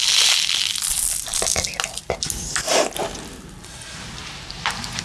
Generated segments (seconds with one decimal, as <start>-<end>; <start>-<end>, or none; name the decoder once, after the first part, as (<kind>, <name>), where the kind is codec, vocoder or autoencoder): none